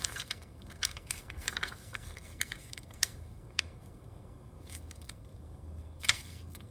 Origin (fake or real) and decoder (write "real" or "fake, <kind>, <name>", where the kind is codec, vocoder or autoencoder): fake, codec, SNAC